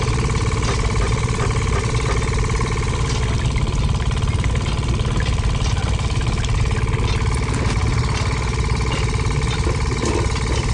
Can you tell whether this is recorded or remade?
recorded